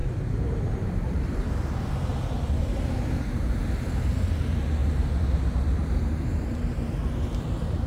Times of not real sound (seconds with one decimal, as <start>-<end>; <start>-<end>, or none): 0.0-2.1; 2.6-3.6; 4.2-7.9